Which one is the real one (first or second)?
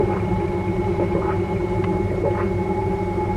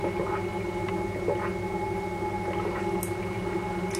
second